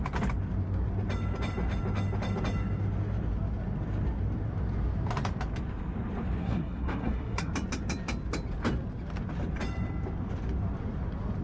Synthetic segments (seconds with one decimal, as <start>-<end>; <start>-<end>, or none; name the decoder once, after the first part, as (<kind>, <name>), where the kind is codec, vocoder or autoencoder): 6.4-7.5 (codec, SNAC)